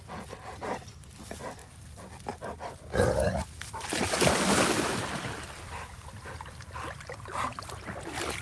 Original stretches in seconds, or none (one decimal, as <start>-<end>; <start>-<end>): 1.6-6.0